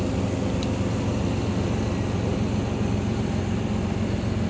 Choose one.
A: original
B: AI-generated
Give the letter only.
A